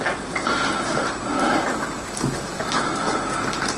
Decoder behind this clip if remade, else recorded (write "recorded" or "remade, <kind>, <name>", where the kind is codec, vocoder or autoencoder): recorded